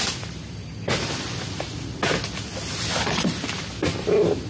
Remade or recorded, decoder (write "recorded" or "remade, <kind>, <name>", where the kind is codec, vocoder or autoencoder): recorded